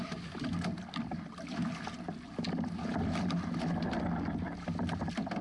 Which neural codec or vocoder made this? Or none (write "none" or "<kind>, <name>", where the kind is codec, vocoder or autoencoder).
none